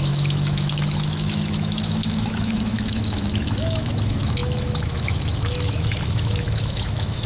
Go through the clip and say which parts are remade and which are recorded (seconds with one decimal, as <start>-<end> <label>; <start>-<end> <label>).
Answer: 0.0-7.3 remade